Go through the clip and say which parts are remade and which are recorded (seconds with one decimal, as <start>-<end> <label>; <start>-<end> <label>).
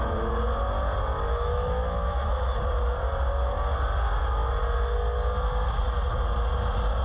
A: 0.0-1.3 recorded; 1.3-2.6 remade; 2.6-7.0 recorded